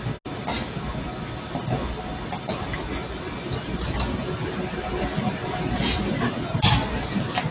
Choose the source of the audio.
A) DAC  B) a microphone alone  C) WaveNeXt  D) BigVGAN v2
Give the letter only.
B